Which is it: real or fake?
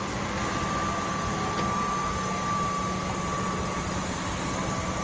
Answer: real